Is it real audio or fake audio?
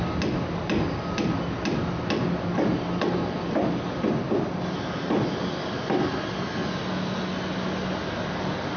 real